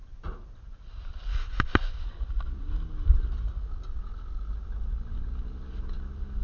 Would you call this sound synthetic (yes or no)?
no